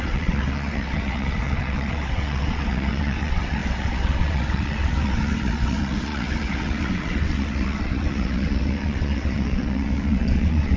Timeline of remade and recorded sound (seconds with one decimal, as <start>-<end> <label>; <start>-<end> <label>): 0.0-10.8 remade